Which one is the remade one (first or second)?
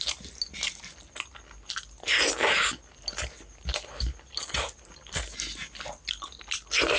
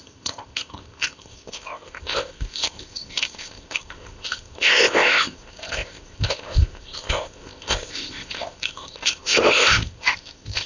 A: second